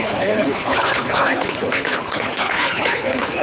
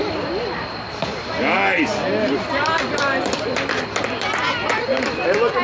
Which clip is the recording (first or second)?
second